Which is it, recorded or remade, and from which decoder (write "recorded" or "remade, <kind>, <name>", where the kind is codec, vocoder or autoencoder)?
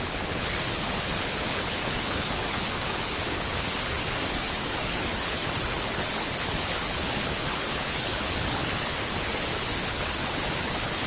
remade, codec, HILCodec